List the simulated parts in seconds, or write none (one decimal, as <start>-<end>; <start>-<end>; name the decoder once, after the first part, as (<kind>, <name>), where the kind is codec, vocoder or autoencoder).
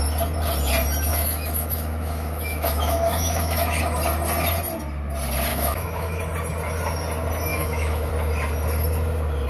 1.1-3.8 (autoencoder, DAC-VAE); 5.5-6.2; 7.5-8.1